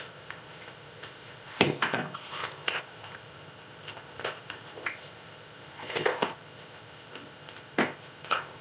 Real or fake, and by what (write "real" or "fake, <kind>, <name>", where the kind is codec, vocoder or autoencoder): fake, codec, ZipCodec